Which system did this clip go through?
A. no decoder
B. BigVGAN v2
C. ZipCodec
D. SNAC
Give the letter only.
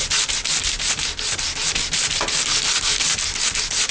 A